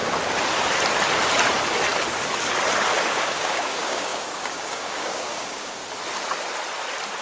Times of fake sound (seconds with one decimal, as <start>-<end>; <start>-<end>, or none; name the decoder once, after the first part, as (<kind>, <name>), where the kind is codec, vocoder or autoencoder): 3.1-5.8 (codec, DAC)